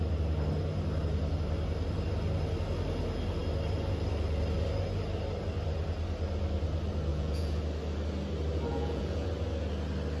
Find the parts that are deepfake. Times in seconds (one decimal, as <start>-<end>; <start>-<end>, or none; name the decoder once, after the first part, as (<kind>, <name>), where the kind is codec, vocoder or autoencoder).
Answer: 7.1-7.6 (vocoder, Vocos); 8.7-9.3